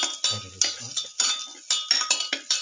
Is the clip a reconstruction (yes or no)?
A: no